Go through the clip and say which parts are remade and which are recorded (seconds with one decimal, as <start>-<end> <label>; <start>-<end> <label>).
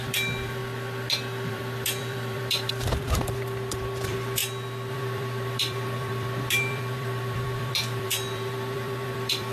0.0-0.6 remade; 0.6-1.5 recorded; 1.5-4.4 remade; 4.4-4.9 recorded; 4.9-9.5 remade